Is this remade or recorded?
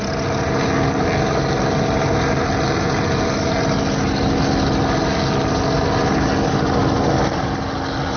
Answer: recorded